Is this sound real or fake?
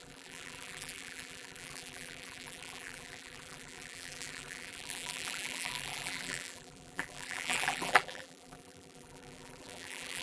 fake